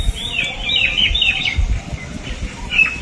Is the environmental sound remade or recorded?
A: recorded